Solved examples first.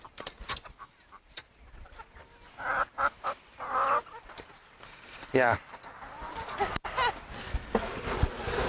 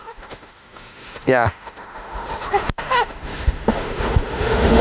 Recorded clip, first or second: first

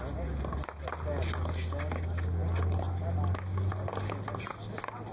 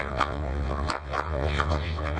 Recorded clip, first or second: first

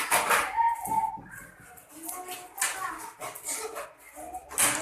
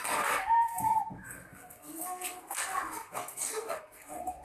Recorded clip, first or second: first